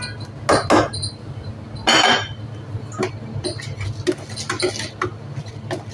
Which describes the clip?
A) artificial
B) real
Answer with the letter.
B